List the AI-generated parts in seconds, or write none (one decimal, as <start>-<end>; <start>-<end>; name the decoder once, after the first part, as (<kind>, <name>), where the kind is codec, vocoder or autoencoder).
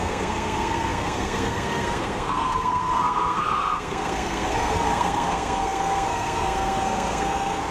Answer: 0.0-7.7 (codec, SNAC)